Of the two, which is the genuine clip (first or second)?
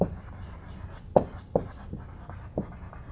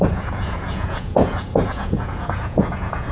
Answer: first